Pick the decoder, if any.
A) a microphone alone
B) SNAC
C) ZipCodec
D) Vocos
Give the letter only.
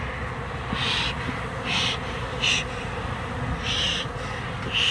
A